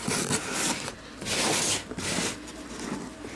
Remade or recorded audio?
recorded